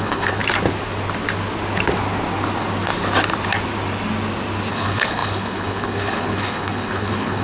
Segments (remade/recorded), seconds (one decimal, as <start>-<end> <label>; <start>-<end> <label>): 0.0-0.4 remade; 0.4-4.7 recorded; 4.7-7.4 remade